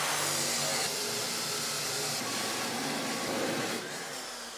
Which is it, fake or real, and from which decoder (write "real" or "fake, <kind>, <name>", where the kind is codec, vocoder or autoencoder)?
real